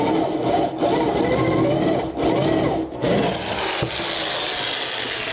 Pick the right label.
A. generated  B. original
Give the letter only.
B